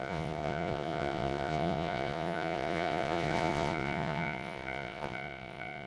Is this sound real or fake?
fake